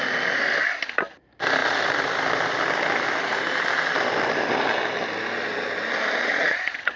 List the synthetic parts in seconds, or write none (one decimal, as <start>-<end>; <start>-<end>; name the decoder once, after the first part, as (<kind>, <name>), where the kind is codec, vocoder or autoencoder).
6.2-7.0 (vocoder, Vocos)